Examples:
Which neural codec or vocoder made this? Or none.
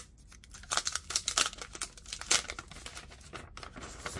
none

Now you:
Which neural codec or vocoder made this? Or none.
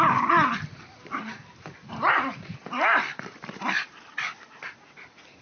none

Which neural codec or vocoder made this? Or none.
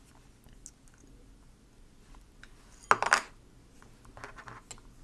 none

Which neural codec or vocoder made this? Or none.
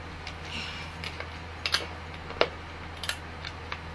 none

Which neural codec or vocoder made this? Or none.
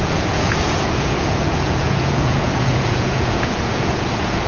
vocoder, Vocos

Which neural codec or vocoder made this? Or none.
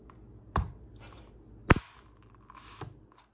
none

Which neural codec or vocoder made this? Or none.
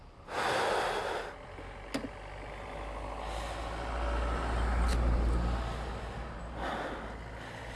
none